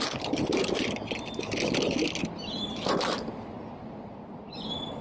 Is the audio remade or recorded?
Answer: recorded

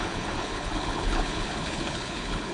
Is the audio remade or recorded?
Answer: remade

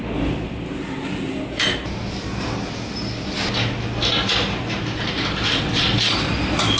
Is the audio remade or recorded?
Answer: recorded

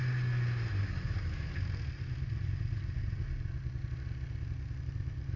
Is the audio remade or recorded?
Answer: recorded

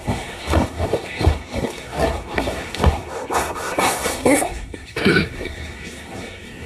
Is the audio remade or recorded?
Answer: remade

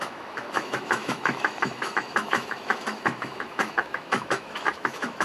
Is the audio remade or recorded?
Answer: remade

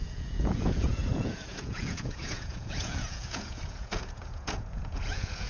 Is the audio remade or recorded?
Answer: remade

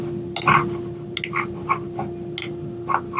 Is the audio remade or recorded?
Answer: recorded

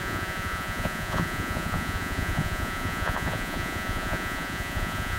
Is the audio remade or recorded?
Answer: remade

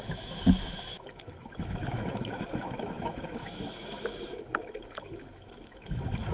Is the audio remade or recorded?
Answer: remade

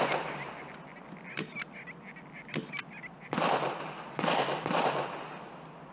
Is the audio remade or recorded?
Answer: recorded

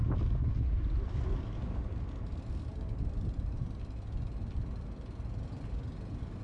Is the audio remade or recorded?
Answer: recorded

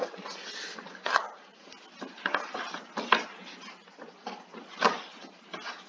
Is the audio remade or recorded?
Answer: recorded